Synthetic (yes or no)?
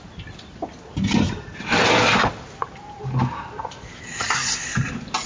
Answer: no